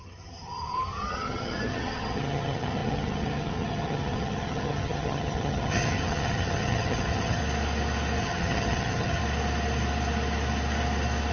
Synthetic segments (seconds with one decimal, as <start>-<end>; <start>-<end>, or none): 0.0-7.4; 8.2-9.2